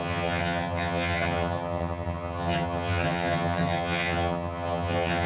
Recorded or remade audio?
remade